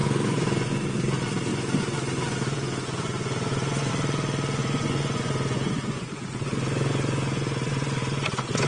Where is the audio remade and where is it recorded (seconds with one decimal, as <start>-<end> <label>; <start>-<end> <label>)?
0.0-0.9 remade; 0.9-1.5 recorded; 1.5-3.9 remade; 3.9-4.6 recorded; 4.6-8.7 remade

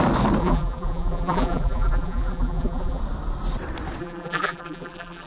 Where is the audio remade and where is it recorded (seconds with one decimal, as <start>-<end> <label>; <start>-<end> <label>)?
0.0-0.4 recorded; 0.4-3.0 remade; 3.0-4.0 recorded; 4.0-5.3 remade

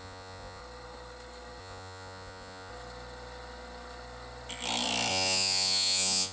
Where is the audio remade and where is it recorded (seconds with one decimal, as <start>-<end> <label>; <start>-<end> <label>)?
0.0-0.6 remade; 0.6-1.6 recorded; 1.6-2.7 remade; 2.7-5.1 recorded; 5.1-6.3 remade

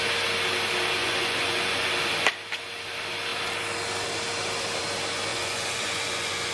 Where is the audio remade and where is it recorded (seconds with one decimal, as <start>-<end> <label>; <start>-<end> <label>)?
0.0-1.0 recorded; 1.0-1.9 remade; 1.9-5.3 recorded; 5.3-6.5 remade

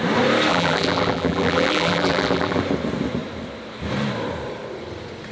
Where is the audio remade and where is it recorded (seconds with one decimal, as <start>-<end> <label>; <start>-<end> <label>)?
0.0-0.5 recorded; 0.5-2.6 remade; 2.6-5.3 recorded